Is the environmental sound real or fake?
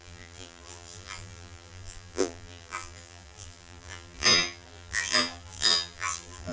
fake